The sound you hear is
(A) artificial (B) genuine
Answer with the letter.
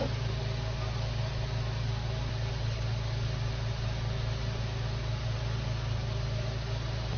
B